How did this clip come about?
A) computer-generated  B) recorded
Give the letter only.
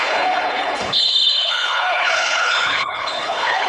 A